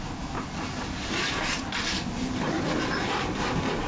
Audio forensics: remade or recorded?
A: recorded